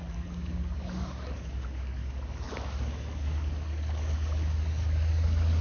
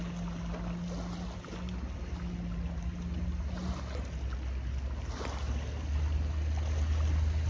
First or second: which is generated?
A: first